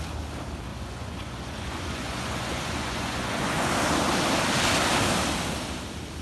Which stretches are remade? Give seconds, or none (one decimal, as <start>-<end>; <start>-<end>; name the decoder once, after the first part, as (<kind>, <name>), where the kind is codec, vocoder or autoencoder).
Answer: 0.7-3.7 (vocoder, Vocos)